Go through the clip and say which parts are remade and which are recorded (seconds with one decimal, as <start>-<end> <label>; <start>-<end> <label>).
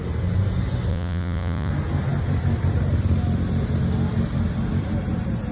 0.0-0.9 recorded; 0.9-1.7 remade; 1.7-5.5 recorded